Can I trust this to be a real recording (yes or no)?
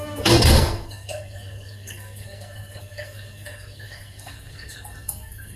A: no